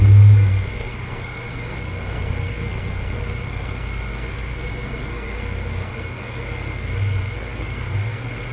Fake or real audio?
fake